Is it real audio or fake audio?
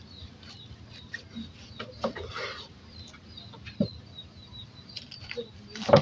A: real